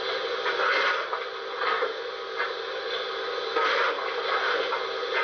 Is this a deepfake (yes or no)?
no